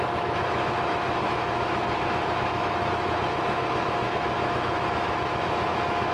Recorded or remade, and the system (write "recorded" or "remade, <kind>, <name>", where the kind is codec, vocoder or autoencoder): remade, autoencoder, DAC-VAE